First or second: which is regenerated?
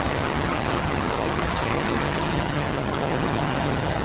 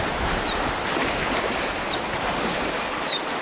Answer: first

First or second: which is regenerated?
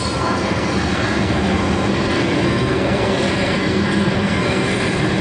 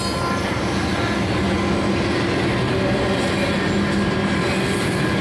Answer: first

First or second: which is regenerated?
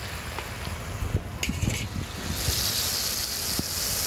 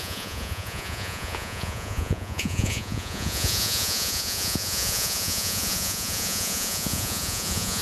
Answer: second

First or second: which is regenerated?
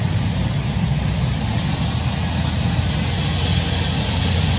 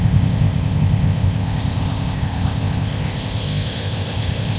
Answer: second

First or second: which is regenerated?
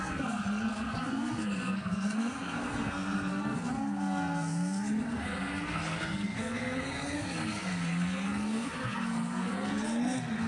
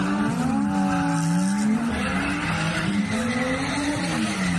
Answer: first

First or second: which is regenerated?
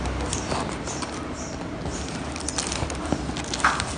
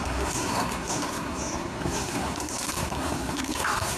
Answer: second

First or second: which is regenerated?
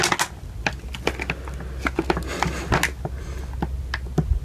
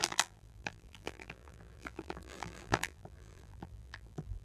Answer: second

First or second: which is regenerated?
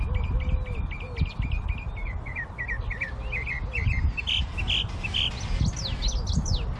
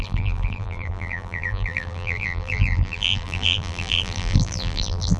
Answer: second